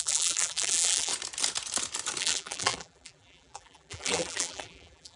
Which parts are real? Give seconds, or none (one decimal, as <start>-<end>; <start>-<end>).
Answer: 1.1-2.2